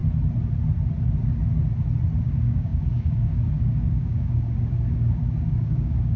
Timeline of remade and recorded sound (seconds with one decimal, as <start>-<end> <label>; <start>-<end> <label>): 0.0-2.2 recorded; 2.2-6.2 remade